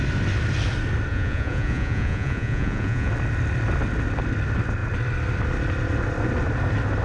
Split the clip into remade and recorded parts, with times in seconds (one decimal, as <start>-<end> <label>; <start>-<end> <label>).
0.0-1.1 recorded; 1.1-3.1 remade; 3.1-7.0 recorded